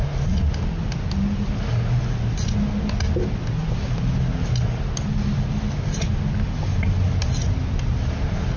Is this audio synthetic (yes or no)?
no